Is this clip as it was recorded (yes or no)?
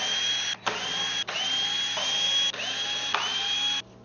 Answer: yes